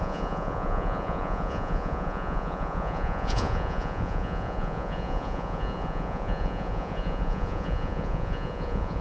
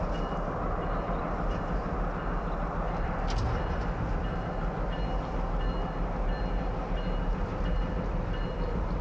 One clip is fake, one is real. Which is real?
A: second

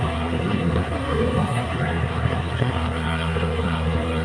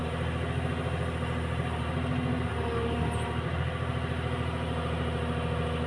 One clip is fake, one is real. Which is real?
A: second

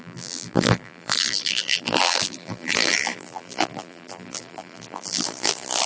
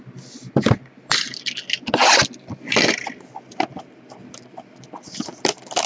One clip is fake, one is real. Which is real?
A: second